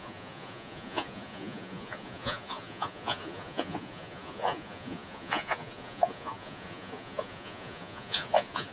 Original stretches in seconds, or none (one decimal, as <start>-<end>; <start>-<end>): none